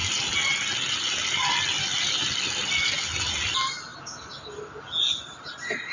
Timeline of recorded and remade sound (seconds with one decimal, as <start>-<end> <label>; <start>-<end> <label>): 0.0-3.5 recorded; 3.5-3.9 remade; 3.9-5.2 recorded; 5.2-5.9 remade